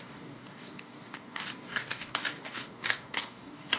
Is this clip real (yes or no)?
no